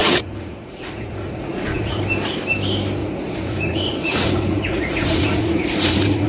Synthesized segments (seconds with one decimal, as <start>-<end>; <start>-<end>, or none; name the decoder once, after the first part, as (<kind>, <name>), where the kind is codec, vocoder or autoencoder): 0.0-2.0 (vocoder, Vocos); 3.0-6.3